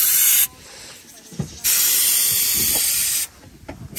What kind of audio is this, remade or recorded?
recorded